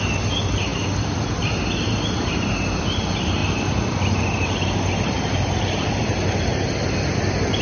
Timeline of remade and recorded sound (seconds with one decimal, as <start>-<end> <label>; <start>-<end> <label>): 0.0-7.6 recorded